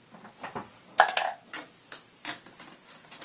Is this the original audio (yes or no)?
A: yes